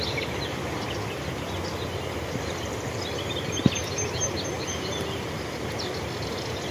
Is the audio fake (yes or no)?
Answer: no